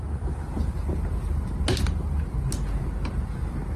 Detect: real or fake real